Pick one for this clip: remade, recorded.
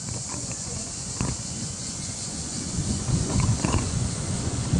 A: remade